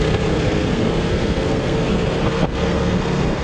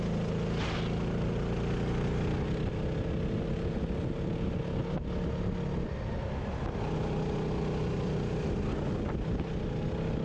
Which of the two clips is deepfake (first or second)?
first